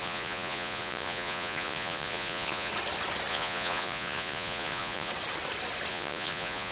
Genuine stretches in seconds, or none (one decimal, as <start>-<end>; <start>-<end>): 2.7-3.3; 5.1-5.9